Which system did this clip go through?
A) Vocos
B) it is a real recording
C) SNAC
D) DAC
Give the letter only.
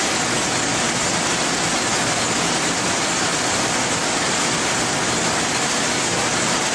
B